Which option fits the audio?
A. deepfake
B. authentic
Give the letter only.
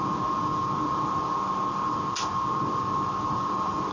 B